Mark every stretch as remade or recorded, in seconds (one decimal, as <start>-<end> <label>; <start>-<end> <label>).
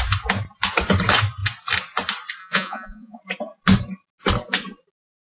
0.0-2.4 recorded; 2.4-3.2 remade; 3.2-5.4 recorded